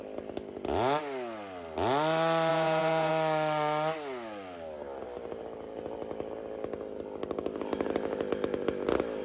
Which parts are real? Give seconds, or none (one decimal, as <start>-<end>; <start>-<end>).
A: 0.0-2.5; 3.1-9.2